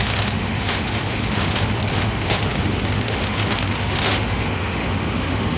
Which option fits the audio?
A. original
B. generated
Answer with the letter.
B